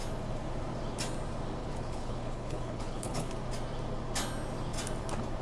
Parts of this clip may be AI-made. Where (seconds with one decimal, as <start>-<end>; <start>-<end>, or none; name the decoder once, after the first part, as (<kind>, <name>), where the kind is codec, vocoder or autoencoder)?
1.6-3.3 (codec, HILCodec)